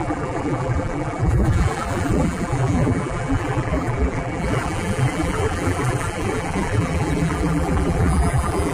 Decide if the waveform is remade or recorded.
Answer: remade